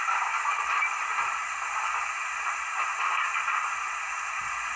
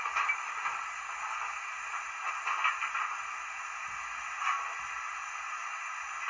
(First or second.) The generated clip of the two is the first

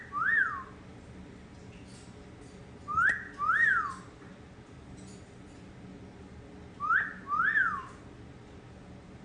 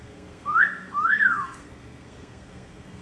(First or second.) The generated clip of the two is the second